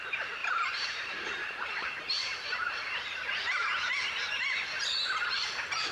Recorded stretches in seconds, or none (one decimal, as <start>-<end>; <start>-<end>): 0.0-0.4; 3.9-5.9